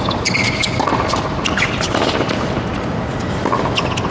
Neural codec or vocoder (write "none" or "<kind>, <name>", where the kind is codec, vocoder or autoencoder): none